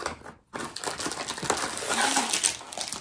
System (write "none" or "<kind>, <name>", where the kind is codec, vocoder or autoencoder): none